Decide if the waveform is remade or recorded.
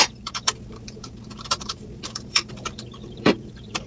remade